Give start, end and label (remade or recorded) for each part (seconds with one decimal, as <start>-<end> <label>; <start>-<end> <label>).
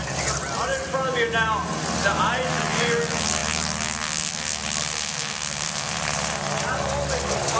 0.0-7.6 recorded